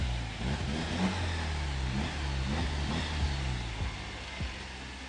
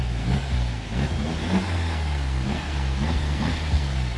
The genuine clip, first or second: first